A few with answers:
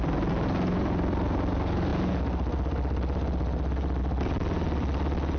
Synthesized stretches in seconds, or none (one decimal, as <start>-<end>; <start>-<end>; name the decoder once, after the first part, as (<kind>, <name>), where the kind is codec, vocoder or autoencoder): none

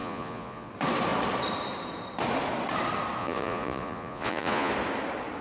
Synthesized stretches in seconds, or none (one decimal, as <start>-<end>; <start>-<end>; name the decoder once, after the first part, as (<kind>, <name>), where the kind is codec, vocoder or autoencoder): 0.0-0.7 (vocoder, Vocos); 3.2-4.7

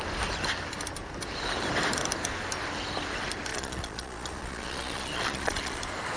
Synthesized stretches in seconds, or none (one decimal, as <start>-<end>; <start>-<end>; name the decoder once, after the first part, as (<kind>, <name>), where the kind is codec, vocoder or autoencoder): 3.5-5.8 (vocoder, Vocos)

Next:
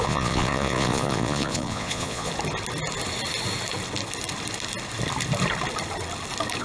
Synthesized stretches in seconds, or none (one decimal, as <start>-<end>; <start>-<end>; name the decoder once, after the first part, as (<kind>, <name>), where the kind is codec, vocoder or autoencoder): 0.0-2.3 (vocoder, Vocos)